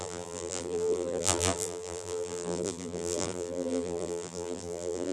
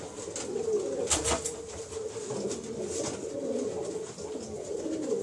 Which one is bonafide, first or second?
second